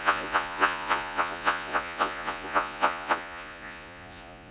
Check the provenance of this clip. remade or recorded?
remade